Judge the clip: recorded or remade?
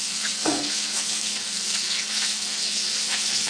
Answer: remade